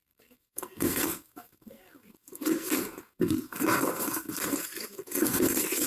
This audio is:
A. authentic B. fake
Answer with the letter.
B